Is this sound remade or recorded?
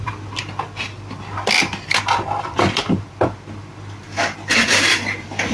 recorded